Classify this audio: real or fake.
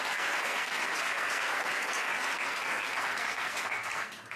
fake